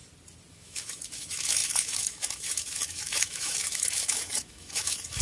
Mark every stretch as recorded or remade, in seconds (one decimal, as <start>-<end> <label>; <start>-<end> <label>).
0.0-0.5 recorded; 0.5-5.2 remade